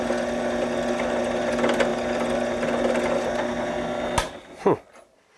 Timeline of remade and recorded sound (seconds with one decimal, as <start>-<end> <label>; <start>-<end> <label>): 0.0-5.4 recorded